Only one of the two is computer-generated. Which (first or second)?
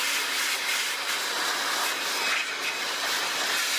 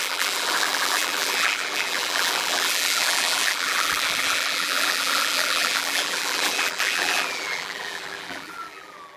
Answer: second